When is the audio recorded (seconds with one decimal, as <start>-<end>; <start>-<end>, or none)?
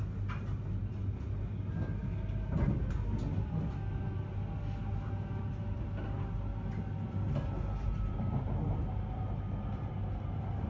0.0-10.7